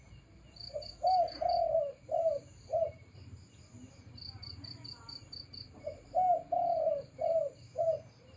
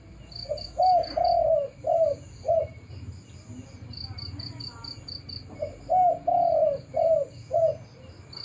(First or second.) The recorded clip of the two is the second